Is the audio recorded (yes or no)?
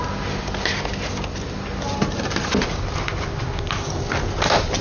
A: yes